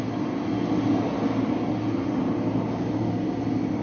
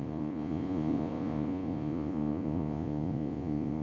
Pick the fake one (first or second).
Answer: second